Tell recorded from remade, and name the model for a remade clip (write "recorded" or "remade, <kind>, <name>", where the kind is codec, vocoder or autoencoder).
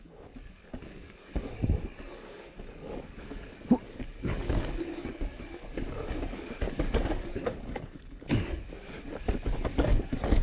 remade, codec, DAC